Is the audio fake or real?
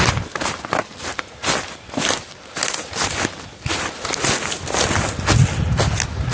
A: real